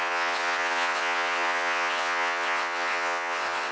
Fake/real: fake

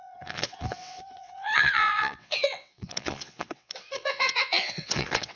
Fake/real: fake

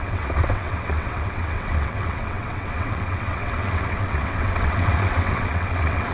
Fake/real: fake